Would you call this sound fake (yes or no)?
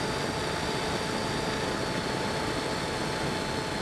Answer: no